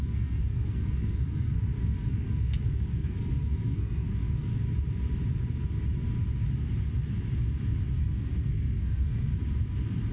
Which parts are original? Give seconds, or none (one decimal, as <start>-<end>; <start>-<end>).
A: 4.5-8.0; 9.3-10.1